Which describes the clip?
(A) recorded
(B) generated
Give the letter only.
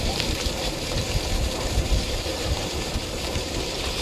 B